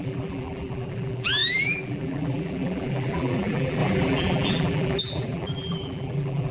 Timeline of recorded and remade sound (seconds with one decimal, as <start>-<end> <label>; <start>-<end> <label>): 0.0-6.5 remade